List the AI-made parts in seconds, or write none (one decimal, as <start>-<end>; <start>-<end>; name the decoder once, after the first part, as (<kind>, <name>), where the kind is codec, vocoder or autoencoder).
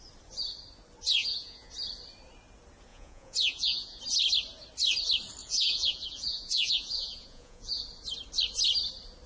1.2-1.7 (vocoder, Vocos); 2.9-4.0; 5.4-7.8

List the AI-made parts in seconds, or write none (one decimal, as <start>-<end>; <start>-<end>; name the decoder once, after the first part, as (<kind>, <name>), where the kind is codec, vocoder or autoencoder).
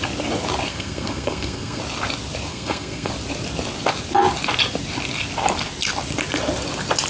0.7-1.8 (codec, SNAC); 2.5-3.1